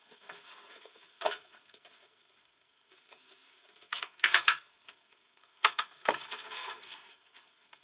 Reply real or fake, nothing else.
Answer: fake